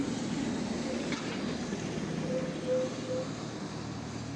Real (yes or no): yes